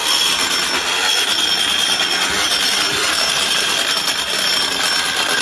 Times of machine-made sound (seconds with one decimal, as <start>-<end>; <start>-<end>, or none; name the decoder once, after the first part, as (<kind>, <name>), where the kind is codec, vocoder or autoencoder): 2.9-3.8 (vocoder, BigVGAN v2)